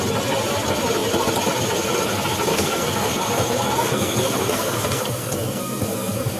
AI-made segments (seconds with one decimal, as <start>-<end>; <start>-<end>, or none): 2.5-6.4